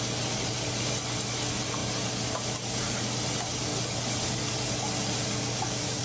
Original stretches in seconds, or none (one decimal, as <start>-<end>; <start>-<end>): 0.0-6.0